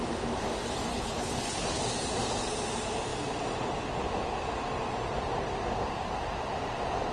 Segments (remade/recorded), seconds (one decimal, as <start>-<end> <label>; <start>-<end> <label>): 0.0-0.9 recorded; 0.9-1.8 remade; 1.8-7.1 recorded